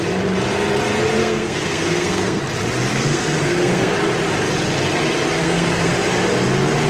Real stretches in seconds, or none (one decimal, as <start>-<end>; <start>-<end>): 0.0-1.2; 2.4-2.9; 3.9-5.4; 5.9-6.9